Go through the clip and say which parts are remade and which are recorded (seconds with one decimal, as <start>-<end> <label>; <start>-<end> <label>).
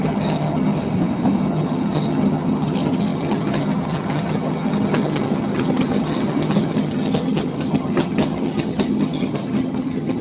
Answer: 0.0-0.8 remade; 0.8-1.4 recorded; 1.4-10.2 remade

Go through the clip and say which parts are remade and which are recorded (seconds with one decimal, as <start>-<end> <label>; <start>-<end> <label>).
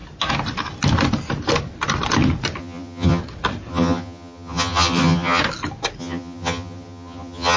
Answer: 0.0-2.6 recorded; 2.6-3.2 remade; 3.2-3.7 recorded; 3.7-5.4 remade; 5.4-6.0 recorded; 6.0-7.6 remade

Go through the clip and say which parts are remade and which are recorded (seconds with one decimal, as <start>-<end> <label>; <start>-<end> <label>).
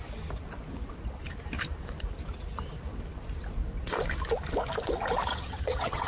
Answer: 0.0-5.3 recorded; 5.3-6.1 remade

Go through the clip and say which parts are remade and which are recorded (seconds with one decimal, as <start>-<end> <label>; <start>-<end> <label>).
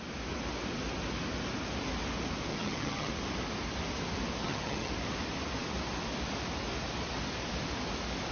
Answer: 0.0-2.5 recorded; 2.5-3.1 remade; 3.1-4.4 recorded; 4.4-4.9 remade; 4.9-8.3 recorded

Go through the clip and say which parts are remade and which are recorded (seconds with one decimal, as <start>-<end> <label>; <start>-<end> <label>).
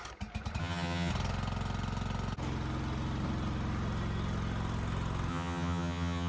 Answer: 0.0-0.6 recorded; 0.6-1.1 remade; 1.1-5.3 recorded; 5.3-6.3 remade